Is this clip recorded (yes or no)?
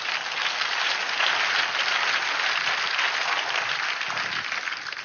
yes